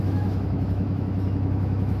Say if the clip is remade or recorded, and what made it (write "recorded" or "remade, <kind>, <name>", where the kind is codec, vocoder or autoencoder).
remade, autoencoder, DAC-VAE